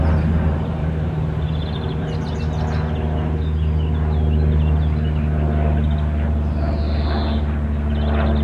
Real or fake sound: real